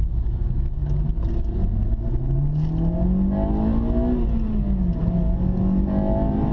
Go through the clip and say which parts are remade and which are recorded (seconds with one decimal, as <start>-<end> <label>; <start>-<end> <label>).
0.0-6.5 recorded